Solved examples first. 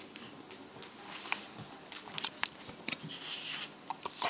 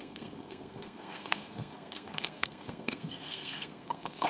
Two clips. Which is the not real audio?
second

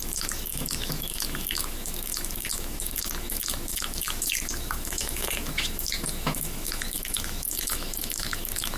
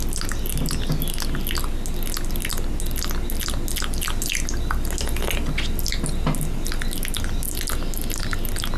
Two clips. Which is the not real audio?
first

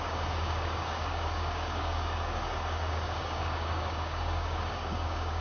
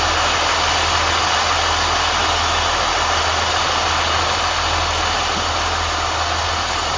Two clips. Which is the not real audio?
first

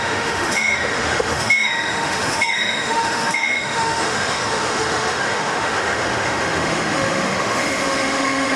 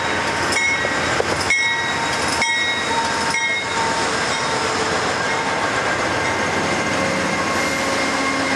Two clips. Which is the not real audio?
first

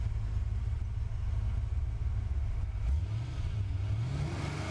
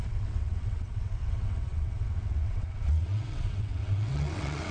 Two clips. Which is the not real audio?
second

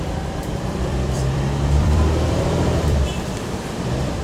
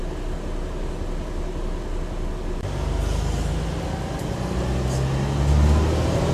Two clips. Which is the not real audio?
first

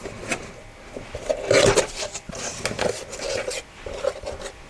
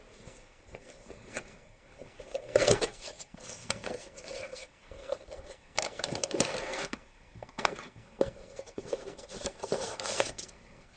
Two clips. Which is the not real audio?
second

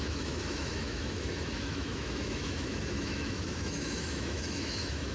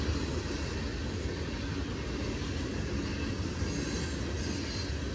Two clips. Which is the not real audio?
first